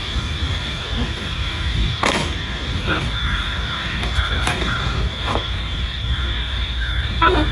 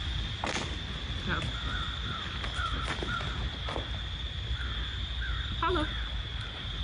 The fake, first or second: first